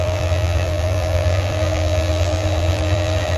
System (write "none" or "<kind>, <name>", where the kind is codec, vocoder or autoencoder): vocoder, BigVGAN v2